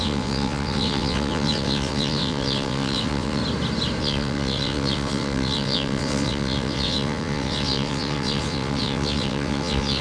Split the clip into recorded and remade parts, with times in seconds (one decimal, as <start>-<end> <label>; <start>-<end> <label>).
0.0-3.4 remade; 3.4-4.0 recorded; 4.0-10.0 remade